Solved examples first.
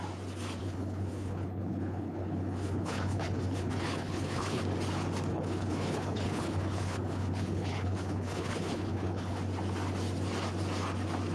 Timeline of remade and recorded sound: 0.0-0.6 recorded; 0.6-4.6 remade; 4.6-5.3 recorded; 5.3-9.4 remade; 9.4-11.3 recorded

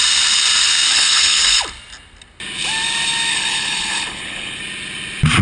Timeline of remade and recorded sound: 0.0-0.9 recorded; 0.9-1.6 remade; 1.6-3.3 recorded; 3.3-4.6 remade; 4.6-5.4 recorded

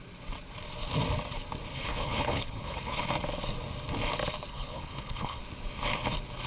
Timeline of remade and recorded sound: 0.0-1.7 recorded; 1.7-3.0 remade; 3.0-4.5 recorded; 4.5-5.4 remade; 5.4-6.5 recorded

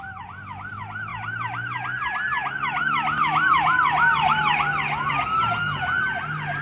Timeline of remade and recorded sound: 0.0-6.6 recorded

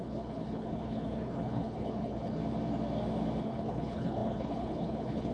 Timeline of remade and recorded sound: 0.0-2.4 remade; 2.4-3.4 recorded; 3.4-5.3 remade

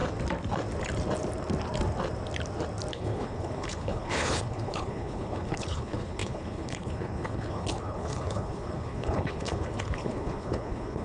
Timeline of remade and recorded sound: 0.0-2.9 recorded; 2.9-11.0 remade

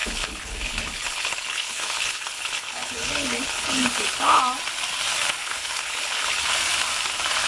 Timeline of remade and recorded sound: 0.0-4.4 remade; 4.4-5.4 recorded; 5.4-6.5 remade; 6.5-7.5 recorded